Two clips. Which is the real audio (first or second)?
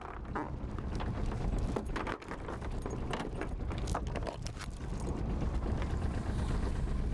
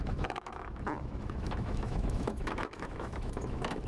first